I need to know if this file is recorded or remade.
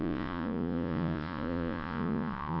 remade